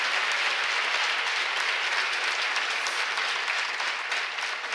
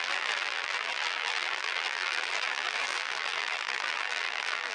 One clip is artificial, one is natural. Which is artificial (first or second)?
second